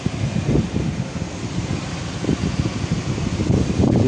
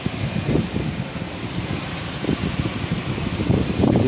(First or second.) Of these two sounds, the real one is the first